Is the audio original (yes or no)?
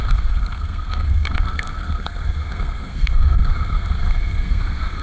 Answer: no